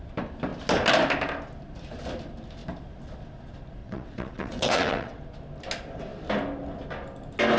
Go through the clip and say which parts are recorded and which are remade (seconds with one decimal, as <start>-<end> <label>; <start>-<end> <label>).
0.0-3.8 recorded; 3.8-5.2 remade; 5.2-7.6 recorded